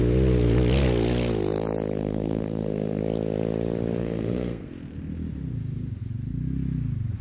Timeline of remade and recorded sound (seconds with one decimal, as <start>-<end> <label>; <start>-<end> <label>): 0.0-2.0 recorded; 2.0-3.0 remade; 3.0-4.0 recorded; 4.0-4.7 remade; 4.7-7.2 recorded